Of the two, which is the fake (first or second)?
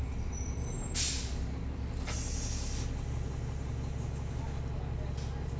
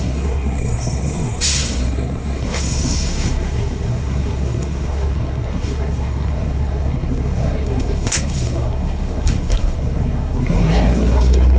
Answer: second